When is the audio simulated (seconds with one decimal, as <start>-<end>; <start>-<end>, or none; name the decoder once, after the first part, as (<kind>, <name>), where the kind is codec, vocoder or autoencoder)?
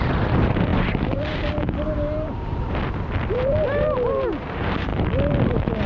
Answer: 0.0-5.9 (vocoder, BigVGAN v2)